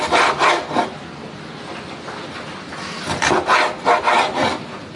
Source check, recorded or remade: recorded